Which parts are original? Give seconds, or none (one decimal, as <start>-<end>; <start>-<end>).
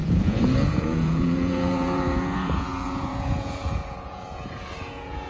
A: none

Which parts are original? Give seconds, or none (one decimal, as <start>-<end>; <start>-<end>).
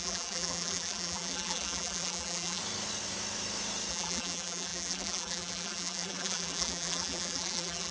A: 2.6-3.9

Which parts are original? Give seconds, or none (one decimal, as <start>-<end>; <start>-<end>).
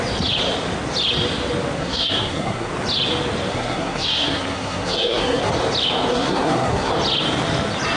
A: 0.0-1.8; 2.7-3.5; 5.5-6.1; 6.9-8.0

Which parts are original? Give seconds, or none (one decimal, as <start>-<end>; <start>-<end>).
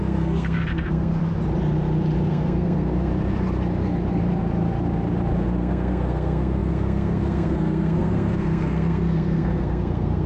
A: 1.2-2.3; 3.1-5.6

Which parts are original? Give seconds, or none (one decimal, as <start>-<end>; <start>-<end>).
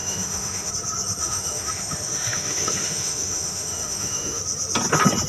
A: 0.7-1.2; 4.4-5.3